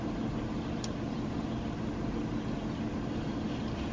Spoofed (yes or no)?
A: no